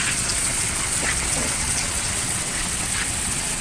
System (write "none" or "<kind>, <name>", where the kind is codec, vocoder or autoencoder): vocoder, WaveNeXt